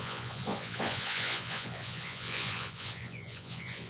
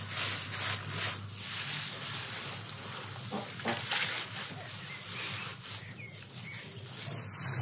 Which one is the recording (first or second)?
second